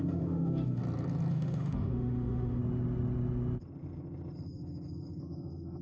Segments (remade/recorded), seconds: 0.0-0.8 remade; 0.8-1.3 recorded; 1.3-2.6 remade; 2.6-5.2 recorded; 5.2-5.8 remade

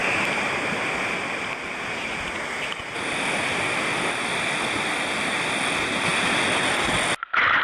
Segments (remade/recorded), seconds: 0.0-7.6 recorded

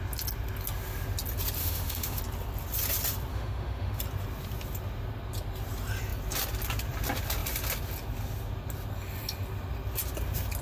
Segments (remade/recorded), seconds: 0.0-1.6 recorded; 1.6-2.2 remade; 2.2-3.3 recorded; 3.3-4.0 remade; 4.0-10.6 recorded

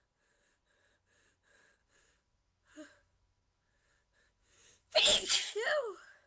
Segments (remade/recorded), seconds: 0.0-1.8 recorded; 1.8-5.3 remade; 5.3-6.3 recorded

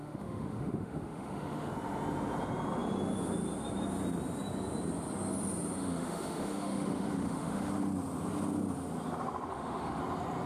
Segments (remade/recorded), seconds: 0.0-1.7 remade; 1.7-5.8 recorded; 5.8-7.7 remade; 7.7-9.5 recorded; 9.5-10.0 remade; 10.0-10.5 recorded